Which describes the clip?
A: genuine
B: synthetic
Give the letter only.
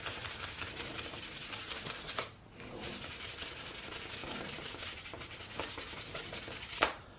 A